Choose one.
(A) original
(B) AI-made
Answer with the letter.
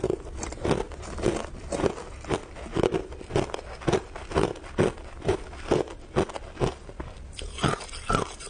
A